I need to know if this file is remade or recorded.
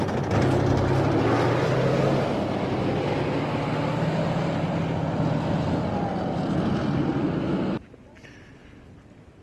recorded